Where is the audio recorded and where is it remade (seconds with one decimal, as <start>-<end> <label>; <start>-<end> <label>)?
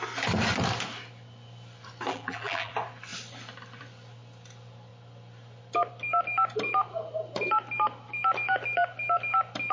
0.0-2.1 recorded; 2.1-2.7 remade; 2.7-9.7 recorded